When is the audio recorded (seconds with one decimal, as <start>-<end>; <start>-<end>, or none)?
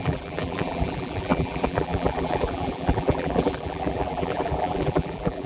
none